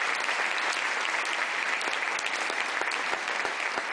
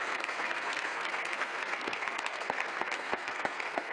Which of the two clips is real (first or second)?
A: first